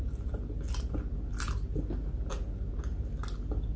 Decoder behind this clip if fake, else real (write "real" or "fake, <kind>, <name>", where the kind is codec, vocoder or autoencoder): real